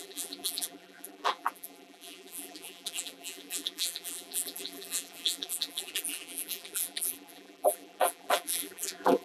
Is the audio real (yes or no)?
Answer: no